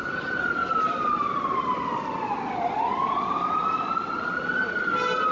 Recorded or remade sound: recorded